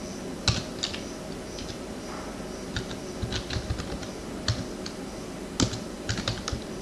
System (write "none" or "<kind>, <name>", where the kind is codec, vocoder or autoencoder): none